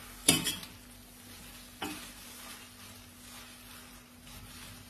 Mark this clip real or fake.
real